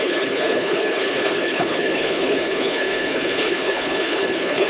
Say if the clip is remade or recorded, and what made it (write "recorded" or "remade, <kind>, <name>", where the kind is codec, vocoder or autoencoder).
remade, codec, HILCodec